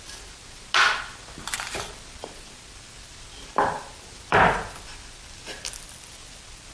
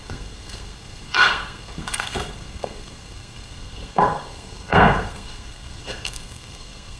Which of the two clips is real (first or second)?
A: first